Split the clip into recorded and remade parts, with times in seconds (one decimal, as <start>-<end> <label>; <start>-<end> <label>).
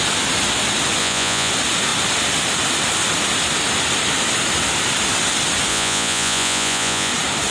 0.0-1.0 recorded; 1.0-1.5 remade; 1.5-5.7 recorded; 5.7-7.1 remade; 7.1-7.5 recorded